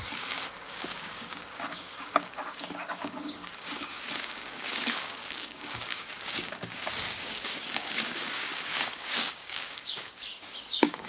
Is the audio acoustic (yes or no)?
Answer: no